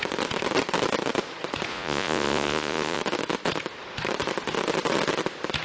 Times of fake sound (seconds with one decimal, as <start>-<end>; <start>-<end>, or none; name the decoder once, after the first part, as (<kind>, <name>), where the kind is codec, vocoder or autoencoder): 1.7-3.0 (vocoder, Vocos)